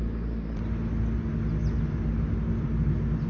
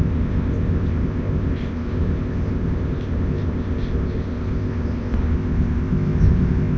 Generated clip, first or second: second